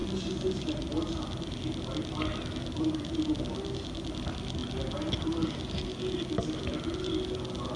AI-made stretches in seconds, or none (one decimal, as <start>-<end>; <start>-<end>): none